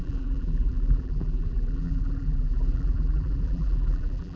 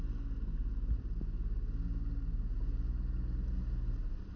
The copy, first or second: first